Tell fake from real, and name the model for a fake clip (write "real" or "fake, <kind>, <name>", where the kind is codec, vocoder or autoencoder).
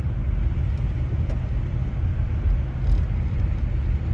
real